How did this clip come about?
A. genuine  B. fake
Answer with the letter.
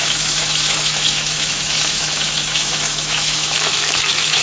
B